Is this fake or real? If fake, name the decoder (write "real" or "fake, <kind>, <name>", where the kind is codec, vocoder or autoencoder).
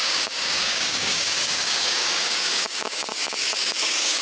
fake, codec, DAC